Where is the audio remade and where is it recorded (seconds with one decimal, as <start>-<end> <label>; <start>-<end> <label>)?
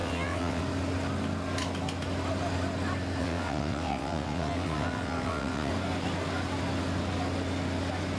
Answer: 0.0-0.6 remade; 0.6-3.2 recorded; 3.2-5.7 remade; 5.7-8.2 recorded